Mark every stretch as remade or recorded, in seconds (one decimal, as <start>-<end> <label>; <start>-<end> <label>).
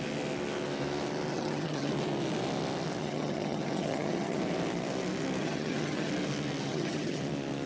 0.0-1.3 recorded; 1.3-1.9 remade; 1.9-3.0 recorded; 3.0-4.4 remade; 4.4-5.4 recorded; 5.4-6.1 remade; 6.1-6.6 recorded; 6.6-7.2 remade; 7.2-7.7 recorded